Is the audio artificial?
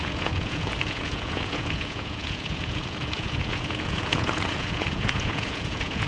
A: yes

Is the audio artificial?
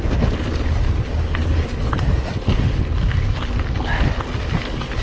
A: no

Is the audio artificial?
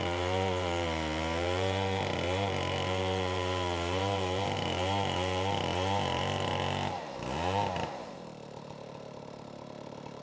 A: yes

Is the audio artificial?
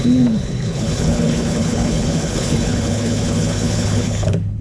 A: yes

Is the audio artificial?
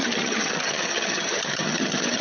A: yes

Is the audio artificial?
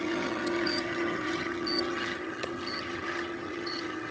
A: yes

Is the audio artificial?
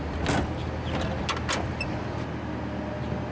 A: no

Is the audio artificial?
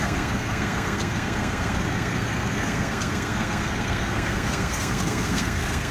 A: yes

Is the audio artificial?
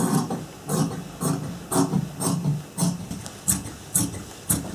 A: no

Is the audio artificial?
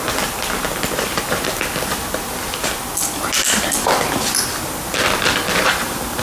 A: no